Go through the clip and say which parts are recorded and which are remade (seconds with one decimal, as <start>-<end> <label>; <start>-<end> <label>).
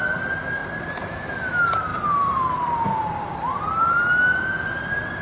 0.0-0.6 recorded; 0.6-1.3 remade; 1.3-1.9 recorded; 1.9-2.4 remade; 2.4-3.0 recorded; 3.0-4.0 remade; 4.0-5.2 recorded